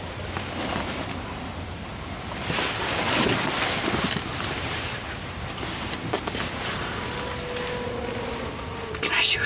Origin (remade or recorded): recorded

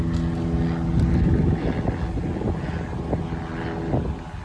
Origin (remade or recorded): recorded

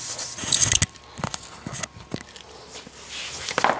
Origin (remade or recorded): recorded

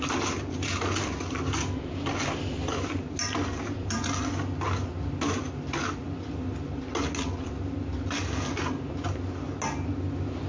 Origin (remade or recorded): recorded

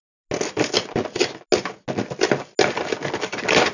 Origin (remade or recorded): recorded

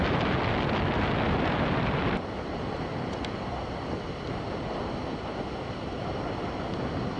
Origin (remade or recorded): recorded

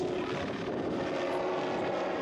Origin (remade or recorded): recorded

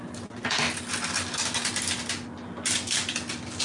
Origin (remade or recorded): recorded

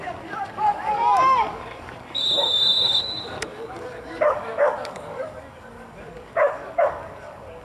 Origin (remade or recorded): remade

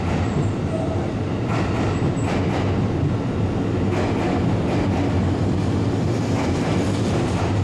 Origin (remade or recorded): recorded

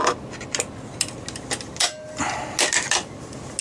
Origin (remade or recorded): recorded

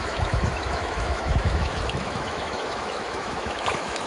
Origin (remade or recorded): remade